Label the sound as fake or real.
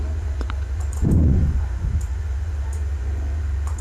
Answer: fake